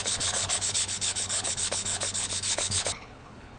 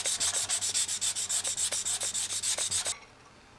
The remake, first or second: first